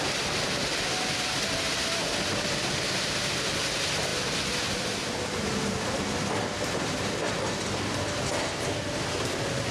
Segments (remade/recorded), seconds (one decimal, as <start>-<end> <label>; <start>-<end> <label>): 0.0-9.7 recorded